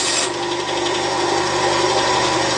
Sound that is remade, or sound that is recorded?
recorded